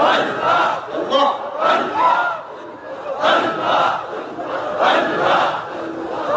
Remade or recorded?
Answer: recorded